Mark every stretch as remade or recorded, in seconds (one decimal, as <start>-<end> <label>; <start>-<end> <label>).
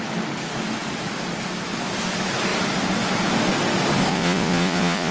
0.0-4.1 recorded; 4.1-5.1 remade